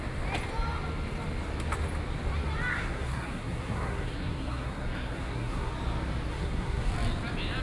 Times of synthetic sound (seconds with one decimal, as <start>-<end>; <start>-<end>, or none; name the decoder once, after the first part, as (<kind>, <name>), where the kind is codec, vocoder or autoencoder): 2.7-5.7 (codec, SNAC); 6.3-6.9